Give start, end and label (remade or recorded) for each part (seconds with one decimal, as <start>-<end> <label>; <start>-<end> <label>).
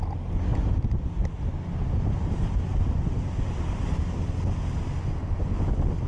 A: 0.0-6.1 recorded